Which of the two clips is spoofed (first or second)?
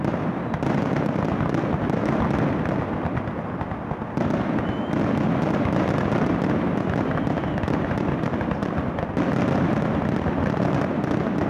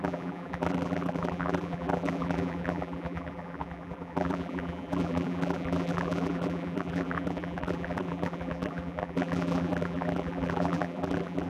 second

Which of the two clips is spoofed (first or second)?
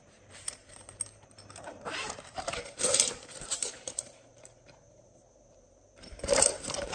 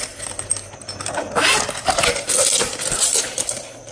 first